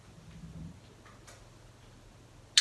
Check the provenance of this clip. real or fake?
real